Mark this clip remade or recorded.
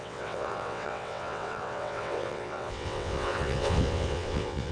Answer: remade